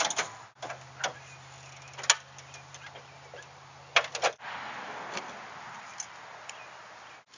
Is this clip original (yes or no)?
yes